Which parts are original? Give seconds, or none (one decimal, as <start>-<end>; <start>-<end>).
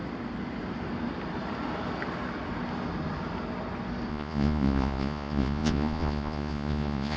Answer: 0.0-4.1